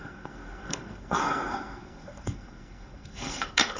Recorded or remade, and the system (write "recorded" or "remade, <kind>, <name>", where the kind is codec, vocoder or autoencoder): remade, codec, SNAC